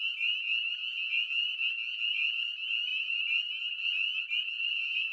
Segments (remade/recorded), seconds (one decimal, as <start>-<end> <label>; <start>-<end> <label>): 0.0-2.9 remade; 2.9-4.2 recorded; 4.2-5.1 remade